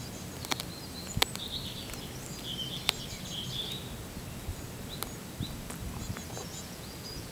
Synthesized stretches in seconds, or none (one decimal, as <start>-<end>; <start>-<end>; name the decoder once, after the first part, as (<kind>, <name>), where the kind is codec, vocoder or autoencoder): 6.4-7.3 (vocoder, Vocos)

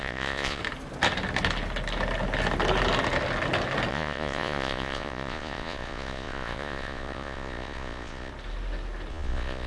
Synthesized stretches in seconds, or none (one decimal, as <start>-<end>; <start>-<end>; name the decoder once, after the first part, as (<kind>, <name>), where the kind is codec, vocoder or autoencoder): 0.0-0.6 (vocoder, Vocos); 3.9-8.3; 9.1-9.7

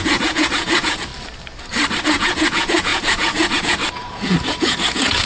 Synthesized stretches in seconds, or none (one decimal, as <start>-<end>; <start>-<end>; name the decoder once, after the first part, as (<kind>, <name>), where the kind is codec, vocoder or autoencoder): 0.0-1.1 (vocoder, Vocos); 2.0-5.3

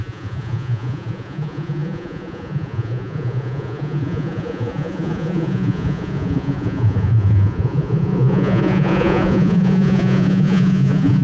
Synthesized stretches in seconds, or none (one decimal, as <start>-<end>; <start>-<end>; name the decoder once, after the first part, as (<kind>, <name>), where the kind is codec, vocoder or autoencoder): 0.0-11.2 (vocoder, Vocos)